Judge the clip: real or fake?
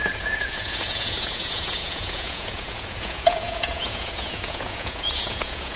fake